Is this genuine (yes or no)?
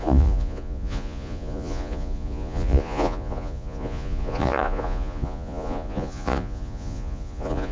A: no